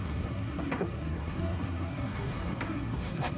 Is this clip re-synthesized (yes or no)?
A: yes